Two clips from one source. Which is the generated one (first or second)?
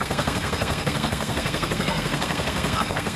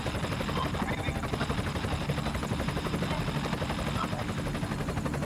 first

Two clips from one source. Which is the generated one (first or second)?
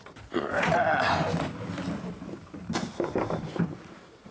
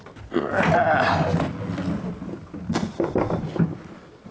first